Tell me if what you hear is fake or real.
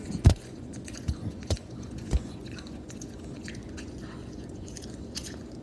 fake